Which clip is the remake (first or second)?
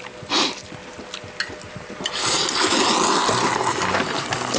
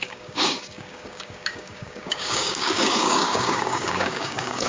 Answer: second